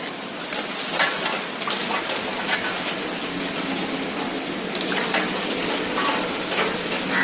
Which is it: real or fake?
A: real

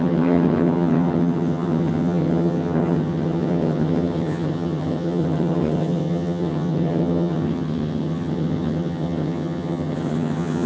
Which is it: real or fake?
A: fake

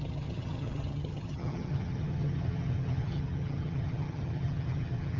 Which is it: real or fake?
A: fake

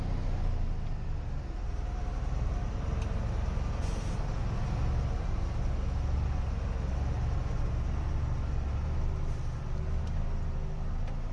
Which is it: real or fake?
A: real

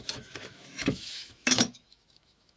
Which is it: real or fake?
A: fake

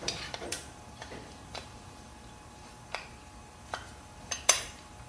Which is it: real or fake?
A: fake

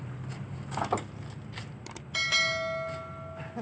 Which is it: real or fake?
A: real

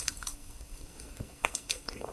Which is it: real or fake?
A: fake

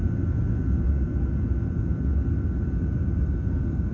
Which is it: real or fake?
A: real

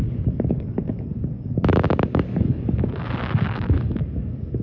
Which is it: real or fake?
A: fake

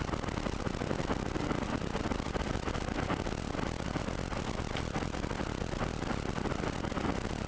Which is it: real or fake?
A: real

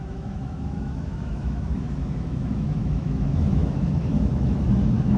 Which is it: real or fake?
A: fake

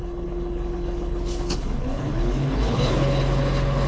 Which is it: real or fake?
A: fake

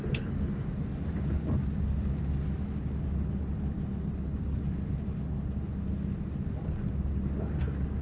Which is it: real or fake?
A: real